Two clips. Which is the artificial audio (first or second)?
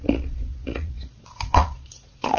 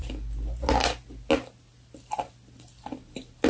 first